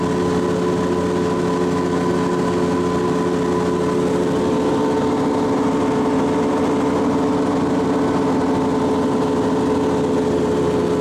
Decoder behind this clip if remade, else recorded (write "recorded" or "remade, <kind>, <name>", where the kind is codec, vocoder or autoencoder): recorded